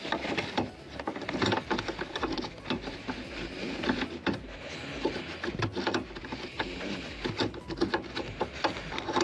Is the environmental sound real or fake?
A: real